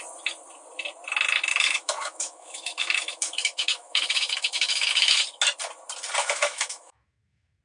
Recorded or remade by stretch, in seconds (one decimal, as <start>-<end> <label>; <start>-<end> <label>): 0.0-1.5 recorded; 1.5-5.2 remade; 5.2-6.2 recorded; 6.2-7.6 remade